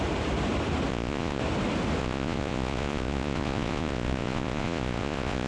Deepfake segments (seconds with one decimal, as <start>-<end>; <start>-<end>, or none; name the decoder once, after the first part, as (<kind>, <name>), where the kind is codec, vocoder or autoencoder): 0.9-1.4 (vocoder, Vocos); 2.0-5.5

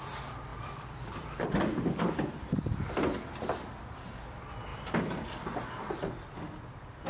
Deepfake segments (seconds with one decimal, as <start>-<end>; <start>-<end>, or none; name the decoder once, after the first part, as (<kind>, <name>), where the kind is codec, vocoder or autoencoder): 0.5-2.8 (vocoder, BigVGAN v2); 4.7-5.6

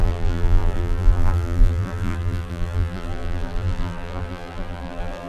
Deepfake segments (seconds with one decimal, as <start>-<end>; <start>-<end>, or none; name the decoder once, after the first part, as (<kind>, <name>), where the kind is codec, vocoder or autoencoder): 0.0-5.3 (vocoder, BigVGAN v2)